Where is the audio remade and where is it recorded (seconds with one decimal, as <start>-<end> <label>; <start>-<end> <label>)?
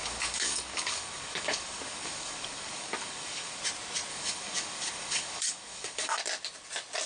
0.0-3.6 remade; 3.6-4.1 recorded; 4.1-6.2 remade; 6.2-7.1 recorded